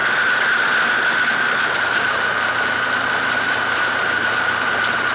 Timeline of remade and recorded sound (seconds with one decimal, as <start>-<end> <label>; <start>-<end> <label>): 0.0-1.9 recorded; 1.9-5.1 remade